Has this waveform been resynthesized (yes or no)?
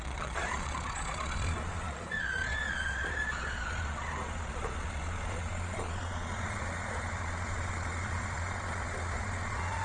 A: yes